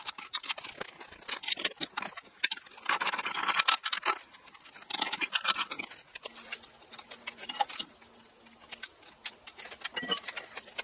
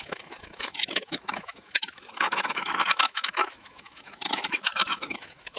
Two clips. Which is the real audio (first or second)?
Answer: first